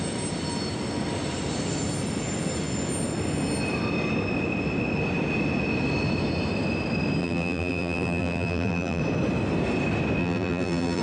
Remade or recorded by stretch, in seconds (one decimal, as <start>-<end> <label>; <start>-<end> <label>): 0.0-7.2 recorded; 7.2-9.0 remade; 9.0-10.2 recorded; 10.2-11.0 remade